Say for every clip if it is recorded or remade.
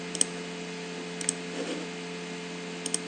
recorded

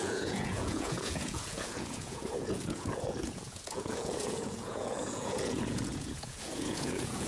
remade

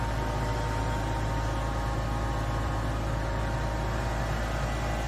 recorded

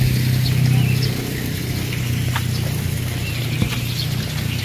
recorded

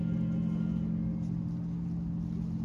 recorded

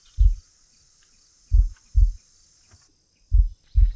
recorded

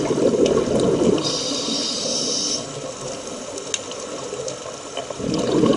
recorded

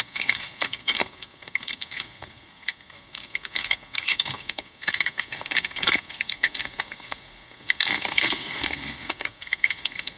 remade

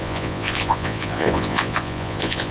remade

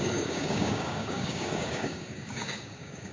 remade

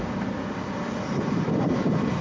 recorded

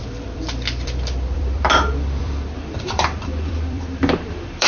remade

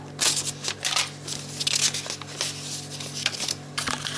recorded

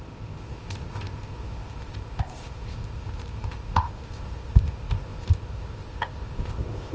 remade